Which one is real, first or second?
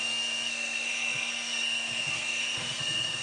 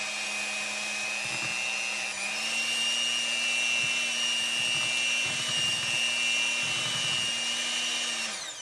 second